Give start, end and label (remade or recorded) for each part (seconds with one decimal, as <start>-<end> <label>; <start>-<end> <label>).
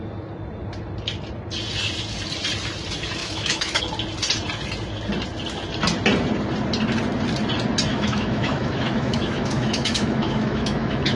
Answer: 0.0-3.2 recorded; 3.2-3.8 remade; 3.8-7.9 recorded; 7.9-11.2 remade